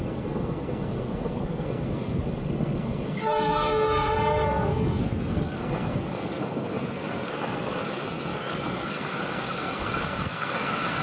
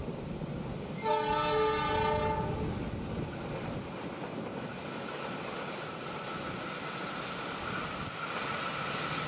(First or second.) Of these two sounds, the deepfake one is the first